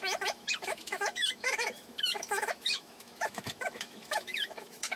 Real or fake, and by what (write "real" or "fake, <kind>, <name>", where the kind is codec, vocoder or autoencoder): fake, autoencoder, DAC-VAE